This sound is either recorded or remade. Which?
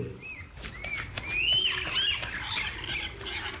recorded